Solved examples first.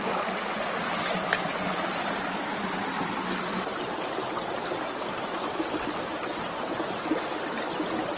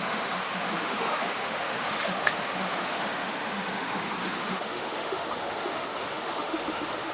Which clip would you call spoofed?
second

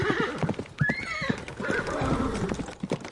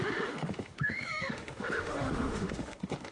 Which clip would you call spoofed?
second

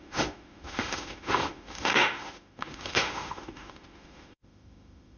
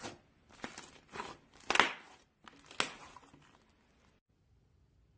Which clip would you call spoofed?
first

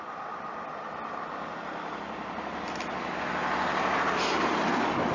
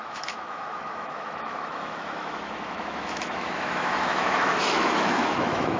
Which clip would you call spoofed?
second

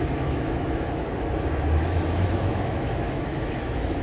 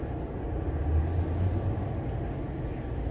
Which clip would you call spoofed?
first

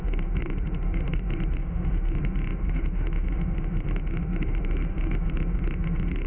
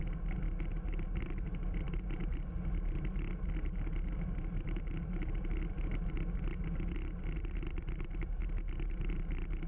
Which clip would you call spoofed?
first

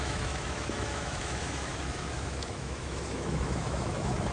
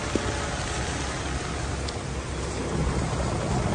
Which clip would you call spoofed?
first